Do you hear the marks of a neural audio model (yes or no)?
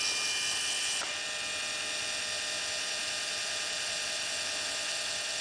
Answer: no